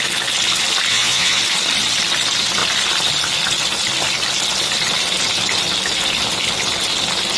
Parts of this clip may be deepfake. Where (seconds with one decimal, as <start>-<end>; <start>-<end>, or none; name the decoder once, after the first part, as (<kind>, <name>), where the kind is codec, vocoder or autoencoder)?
0.9-1.4 (vocoder, Vocos)

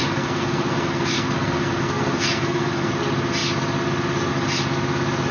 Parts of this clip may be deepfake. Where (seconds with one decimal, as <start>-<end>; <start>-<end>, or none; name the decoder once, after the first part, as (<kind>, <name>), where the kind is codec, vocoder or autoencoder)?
0.0-2.9 (codec, SNAC)